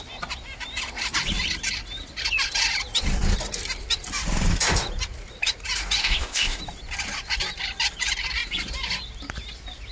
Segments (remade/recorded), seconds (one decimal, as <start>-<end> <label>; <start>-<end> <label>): 0.0-6.0 recorded; 6.0-6.6 remade; 6.6-9.9 recorded